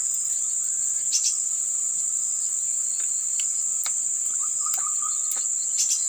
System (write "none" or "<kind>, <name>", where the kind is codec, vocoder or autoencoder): none